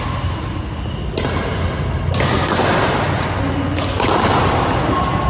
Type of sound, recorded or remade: recorded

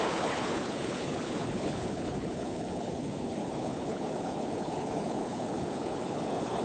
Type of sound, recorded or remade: remade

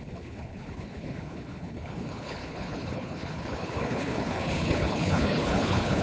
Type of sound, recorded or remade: remade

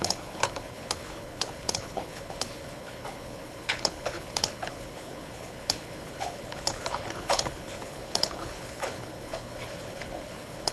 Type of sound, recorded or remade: remade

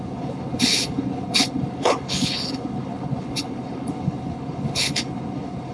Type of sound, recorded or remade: remade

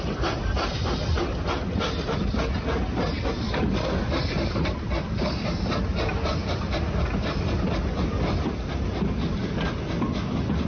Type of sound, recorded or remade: recorded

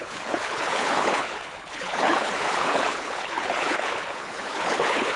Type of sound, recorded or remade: remade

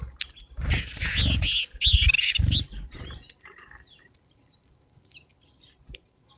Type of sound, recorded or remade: recorded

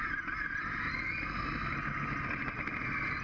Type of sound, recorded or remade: recorded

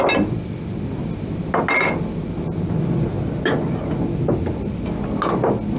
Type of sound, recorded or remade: recorded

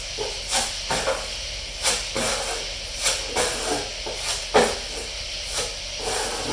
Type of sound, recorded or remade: recorded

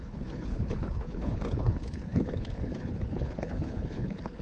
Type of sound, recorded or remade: remade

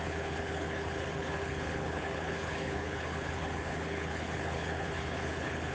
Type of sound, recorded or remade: remade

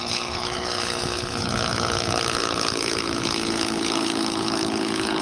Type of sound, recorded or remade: remade